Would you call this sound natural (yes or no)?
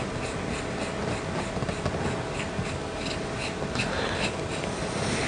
yes